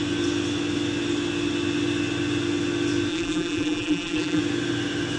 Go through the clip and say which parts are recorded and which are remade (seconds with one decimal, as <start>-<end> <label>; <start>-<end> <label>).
0.0-3.1 recorded; 3.1-4.4 remade; 4.4-5.2 recorded